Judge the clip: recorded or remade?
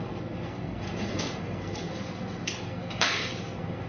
remade